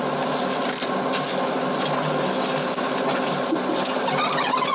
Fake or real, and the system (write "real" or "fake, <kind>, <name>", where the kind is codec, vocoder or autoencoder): real